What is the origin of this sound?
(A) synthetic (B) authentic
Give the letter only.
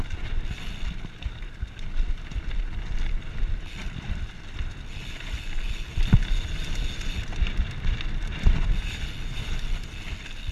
B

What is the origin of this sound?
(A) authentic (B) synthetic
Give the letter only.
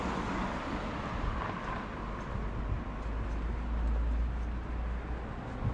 A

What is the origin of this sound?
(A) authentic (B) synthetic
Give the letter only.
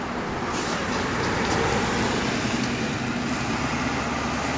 A